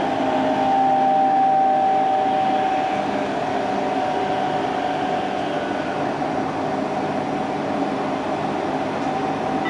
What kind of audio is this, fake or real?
real